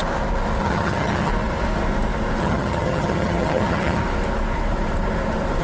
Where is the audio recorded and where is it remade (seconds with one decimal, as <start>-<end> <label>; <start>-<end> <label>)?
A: 0.0-0.6 recorded; 0.6-1.3 remade; 1.3-2.4 recorded; 2.4-4.0 remade; 4.0-5.6 recorded